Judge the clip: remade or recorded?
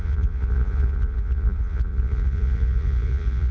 remade